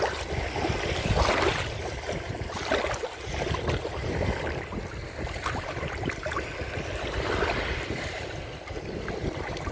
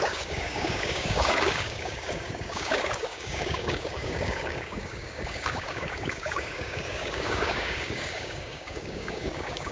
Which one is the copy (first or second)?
second